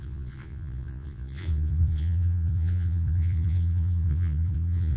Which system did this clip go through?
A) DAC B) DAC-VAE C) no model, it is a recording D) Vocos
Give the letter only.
D